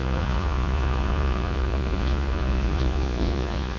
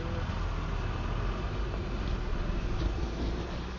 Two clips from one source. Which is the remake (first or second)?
first